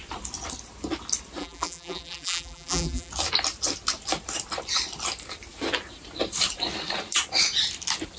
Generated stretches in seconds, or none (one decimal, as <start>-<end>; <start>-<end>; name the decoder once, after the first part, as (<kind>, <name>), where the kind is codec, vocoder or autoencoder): 1.4-3.1 (vocoder, BigVGAN v2)